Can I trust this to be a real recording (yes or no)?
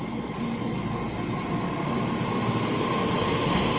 yes